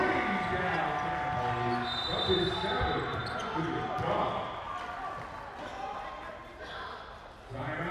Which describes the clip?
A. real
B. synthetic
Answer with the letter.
A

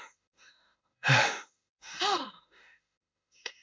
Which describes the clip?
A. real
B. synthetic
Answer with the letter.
B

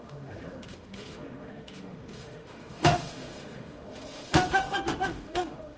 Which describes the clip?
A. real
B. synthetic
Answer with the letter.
B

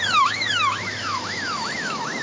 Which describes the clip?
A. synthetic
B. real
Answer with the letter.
A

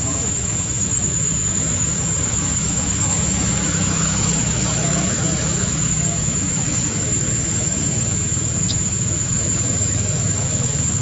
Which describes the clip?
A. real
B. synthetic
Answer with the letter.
B